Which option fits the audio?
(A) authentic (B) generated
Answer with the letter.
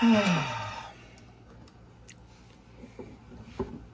A